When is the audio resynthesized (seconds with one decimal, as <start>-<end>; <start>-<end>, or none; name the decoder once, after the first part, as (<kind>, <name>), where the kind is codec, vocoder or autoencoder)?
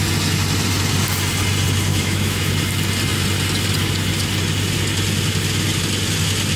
1.9-2.5 (autoencoder, DAC-VAE)